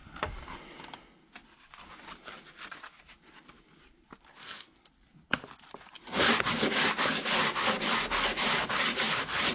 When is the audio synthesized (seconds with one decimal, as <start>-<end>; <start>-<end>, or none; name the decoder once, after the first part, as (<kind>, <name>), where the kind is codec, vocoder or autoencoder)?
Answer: 4.3-4.8 (codec, SNAC)